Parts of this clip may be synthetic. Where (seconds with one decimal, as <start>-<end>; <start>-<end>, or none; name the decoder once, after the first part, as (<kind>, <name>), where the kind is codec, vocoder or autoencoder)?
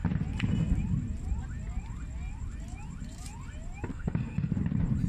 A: 3.9-4.5 (codec, SNAC)